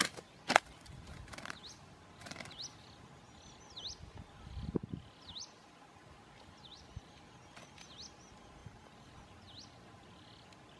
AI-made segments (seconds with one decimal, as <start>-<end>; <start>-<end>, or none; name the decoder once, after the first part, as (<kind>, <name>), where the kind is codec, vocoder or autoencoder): 8.6-9.1 (vocoder, BigVGAN v2)